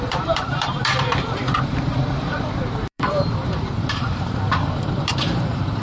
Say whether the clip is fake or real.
fake